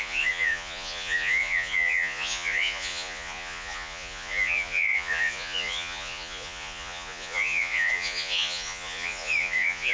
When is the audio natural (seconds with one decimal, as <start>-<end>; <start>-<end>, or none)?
none